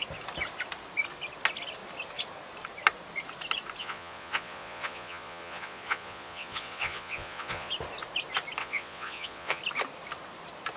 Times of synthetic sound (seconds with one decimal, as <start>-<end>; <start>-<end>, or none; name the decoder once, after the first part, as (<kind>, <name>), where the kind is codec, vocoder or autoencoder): 3.8-7.7 (vocoder, Vocos); 8.6-9.6